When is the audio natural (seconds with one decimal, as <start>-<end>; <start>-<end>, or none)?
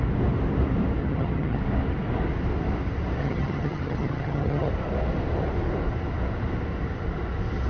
0.0-1.0; 1.6-3.2; 4.7-7.7